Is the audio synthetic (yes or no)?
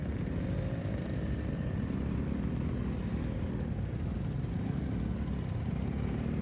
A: no